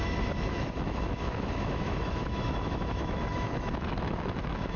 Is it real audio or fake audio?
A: fake